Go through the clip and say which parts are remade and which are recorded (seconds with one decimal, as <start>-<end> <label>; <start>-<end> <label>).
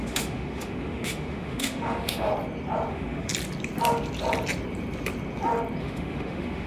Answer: 0.0-2.3 remade; 2.3-2.9 recorded; 2.9-3.3 remade; 3.3-5.8 recorded; 5.8-6.7 remade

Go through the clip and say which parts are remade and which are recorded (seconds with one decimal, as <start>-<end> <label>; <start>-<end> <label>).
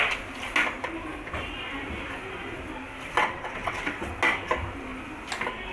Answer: 0.0-3.2 recorded; 3.2-4.1 remade; 4.1-5.7 recorded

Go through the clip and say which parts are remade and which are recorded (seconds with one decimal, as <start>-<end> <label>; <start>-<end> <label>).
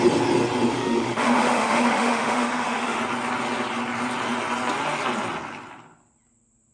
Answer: 0.0-0.7 recorded; 0.7-3.0 remade; 3.0-6.7 recorded